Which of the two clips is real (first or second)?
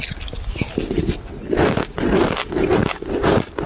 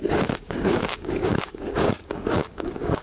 first